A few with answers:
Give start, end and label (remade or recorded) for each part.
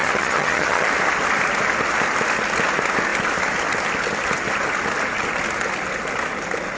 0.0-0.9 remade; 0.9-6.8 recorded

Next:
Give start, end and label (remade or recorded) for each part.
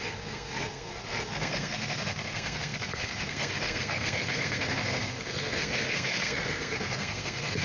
0.0-7.6 remade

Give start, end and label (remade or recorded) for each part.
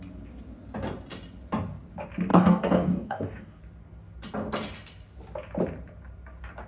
0.0-2.3 recorded; 2.3-3.6 remade; 3.6-6.7 recorded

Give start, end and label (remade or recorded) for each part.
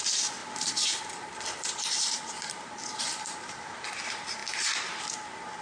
0.0-4.4 remade; 4.4-5.0 recorded; 5.0-5.6 remade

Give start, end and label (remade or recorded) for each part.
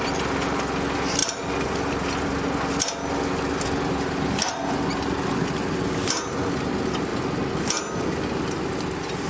0.0-9.3 recorded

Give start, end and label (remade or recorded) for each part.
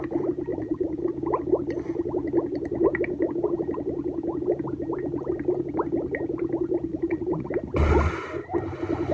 0.0-0.5 recorded; 0.5-1.0 remade; 1.0-6.9 recorded; 6.9-7.5 remade; 7.5-9.1 recorded